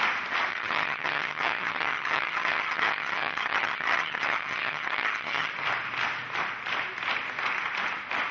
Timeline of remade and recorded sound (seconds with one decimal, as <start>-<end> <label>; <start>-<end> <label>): 0.0-0.5 recorded; 0.5-5.5 remade; 5.5-8.3 recorded